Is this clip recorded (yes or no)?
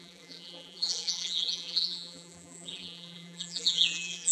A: no